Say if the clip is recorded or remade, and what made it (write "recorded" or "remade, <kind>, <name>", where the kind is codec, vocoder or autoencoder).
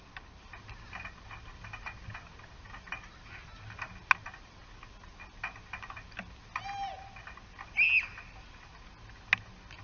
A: recorded